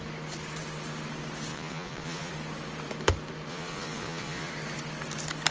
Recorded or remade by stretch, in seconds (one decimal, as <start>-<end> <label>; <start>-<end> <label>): 0.0-1.5 recorded; 1.5-2.3 remade; 2.3-3.5 recorded; 3.5-4.5 remade; 4.5-5.5 recorded